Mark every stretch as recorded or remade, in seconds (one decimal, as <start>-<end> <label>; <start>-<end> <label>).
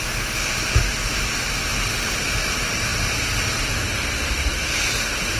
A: 0.0-0.8 recorded; 0.8-1.3 remade; 1.3-5.4 recorded